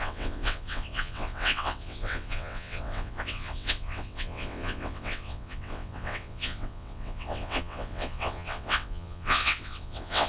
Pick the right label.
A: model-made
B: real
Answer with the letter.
A